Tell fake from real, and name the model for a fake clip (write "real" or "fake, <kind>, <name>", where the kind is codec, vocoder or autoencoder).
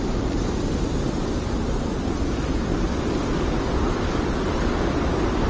real